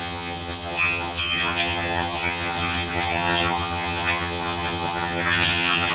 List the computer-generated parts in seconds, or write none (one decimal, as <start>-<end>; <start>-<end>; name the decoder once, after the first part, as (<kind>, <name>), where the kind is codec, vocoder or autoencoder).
0.0-5.9 (vocoder, HiFi-GAN)